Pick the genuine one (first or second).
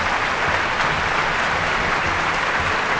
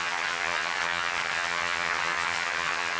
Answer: first